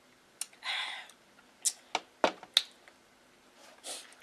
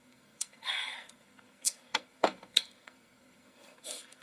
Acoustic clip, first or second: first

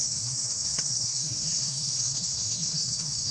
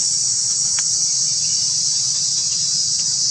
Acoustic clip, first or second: second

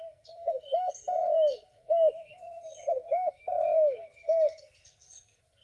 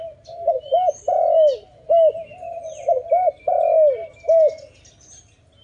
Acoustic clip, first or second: second